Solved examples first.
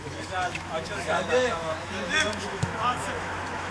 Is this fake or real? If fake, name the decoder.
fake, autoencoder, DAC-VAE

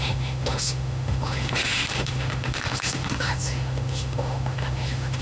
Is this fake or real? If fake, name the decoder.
fake, autoencoder, DAC-VAE